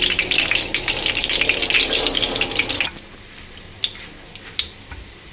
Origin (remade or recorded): recorded